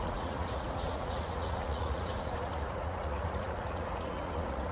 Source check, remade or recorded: remade